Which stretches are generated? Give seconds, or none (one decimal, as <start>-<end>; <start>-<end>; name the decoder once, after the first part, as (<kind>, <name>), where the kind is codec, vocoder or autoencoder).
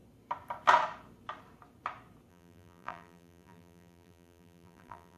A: 2.3-5.2 (vocoder, BigVGAN v2)